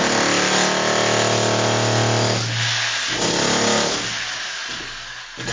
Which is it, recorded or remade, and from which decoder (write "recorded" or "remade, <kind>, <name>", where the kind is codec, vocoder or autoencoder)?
recorded